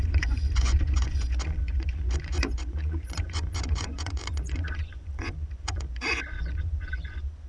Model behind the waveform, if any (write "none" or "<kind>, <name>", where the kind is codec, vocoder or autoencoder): vocoder, Vocos